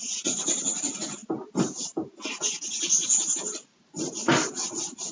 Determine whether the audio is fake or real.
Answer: real